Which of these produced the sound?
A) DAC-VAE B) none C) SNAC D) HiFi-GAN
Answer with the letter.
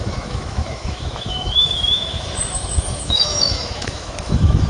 A